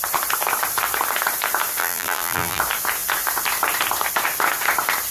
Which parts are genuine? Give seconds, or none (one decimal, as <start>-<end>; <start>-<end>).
0.0-1.8; 2.6-5.1